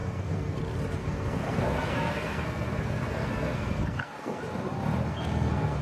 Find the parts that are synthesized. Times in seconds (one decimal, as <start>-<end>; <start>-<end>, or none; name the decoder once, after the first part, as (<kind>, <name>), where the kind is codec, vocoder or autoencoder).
0.0-0.6 (codec, SNAC); 1.0-4.4; 5.1-5.8